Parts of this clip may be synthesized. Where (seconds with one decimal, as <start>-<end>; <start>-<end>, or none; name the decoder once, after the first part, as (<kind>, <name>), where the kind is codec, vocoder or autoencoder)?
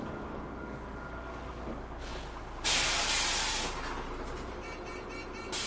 0.0-2.1 (codec, DAC)